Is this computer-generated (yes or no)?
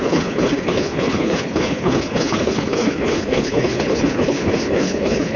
yes